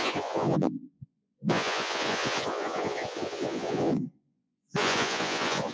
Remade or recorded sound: remade